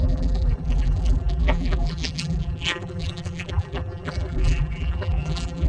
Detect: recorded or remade remade